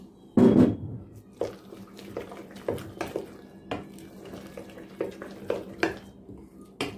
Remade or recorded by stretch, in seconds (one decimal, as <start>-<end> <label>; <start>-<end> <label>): 0.0-7.0 recorded